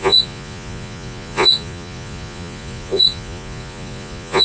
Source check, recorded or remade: remade